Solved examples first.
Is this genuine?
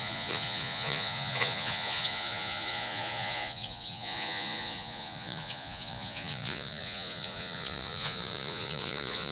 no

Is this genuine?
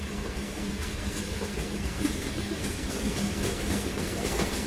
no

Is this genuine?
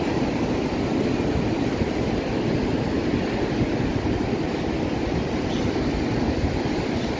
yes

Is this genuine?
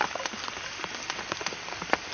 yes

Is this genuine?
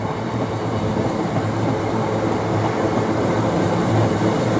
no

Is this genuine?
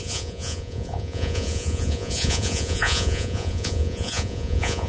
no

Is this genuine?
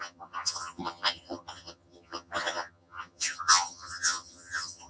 no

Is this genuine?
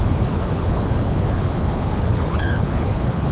no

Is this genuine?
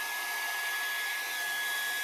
yes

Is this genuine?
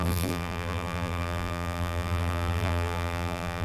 no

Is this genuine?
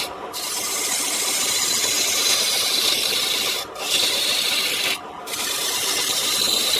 no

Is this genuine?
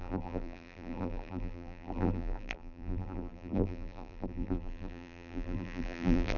no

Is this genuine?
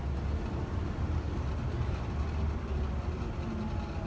yes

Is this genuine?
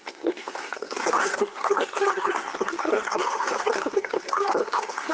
no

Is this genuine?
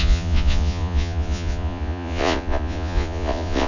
no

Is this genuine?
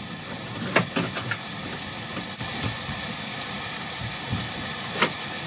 yes